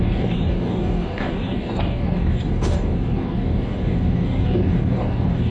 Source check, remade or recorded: remade